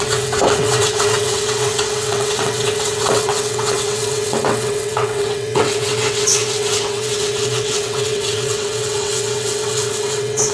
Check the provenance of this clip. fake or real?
fake